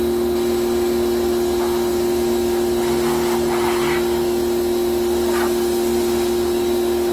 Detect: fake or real real